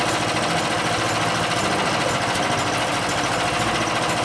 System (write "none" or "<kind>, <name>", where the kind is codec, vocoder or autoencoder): none